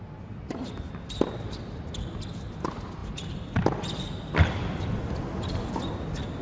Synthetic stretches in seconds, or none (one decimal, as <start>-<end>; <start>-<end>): none